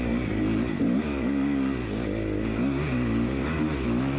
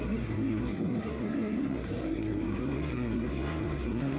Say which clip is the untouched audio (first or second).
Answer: first